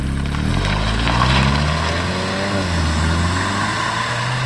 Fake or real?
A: real